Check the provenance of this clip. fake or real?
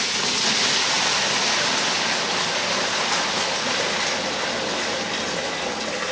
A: real